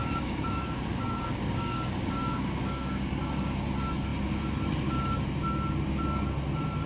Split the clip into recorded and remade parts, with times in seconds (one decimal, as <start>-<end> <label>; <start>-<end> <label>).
0.0-3.6 remade; 3.6-6.9 recorded